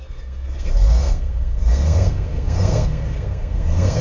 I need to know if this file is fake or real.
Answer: fake